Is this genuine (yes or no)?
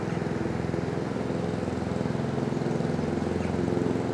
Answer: yes